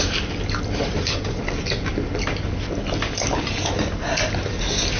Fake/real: real